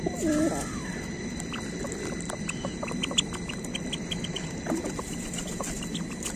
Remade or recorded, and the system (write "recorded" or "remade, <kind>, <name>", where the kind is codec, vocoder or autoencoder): recorded